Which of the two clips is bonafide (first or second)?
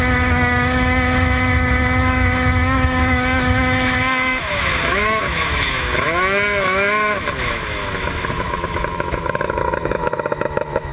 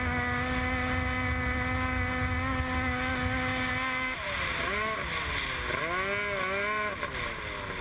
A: second